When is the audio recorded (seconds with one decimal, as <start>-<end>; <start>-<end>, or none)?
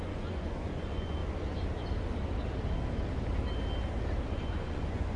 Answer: 1.2-4.3